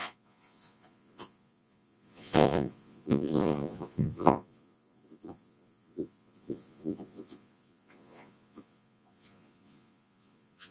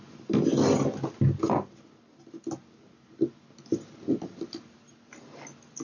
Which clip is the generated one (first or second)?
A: first